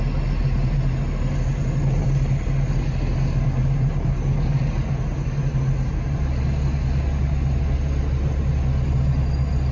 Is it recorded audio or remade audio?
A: recorded